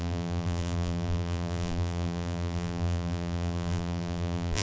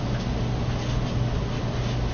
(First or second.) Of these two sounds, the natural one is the second